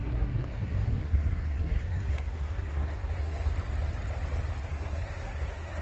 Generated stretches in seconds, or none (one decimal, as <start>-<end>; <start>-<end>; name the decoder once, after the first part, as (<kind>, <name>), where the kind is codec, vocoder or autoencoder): 0.0-3.5 (codec, SNAC); 4.7-5.8